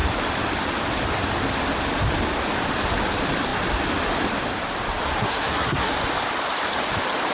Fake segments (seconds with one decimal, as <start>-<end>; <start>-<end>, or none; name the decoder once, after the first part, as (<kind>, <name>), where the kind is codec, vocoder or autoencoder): 5.2-5.9 (codec, SNAC)